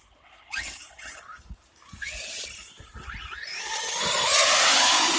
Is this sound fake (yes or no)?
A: no